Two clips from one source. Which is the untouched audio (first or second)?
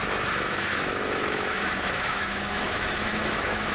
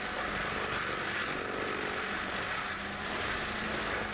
second